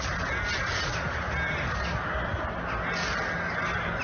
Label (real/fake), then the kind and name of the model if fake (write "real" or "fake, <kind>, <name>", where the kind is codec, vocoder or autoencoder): real